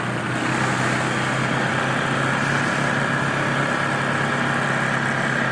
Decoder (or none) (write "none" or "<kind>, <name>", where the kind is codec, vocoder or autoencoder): none